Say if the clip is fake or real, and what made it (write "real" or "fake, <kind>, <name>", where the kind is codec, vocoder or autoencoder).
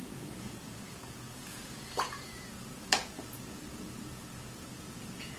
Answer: fake, vocoder, Vocos